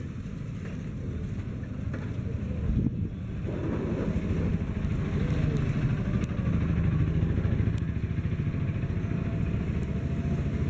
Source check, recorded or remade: recorded